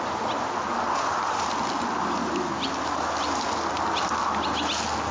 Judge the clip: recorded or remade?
recorded